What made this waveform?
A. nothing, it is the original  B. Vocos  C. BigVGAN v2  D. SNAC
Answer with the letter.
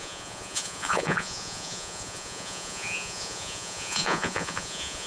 B